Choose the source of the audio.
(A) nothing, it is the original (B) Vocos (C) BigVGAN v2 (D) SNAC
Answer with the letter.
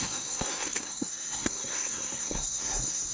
D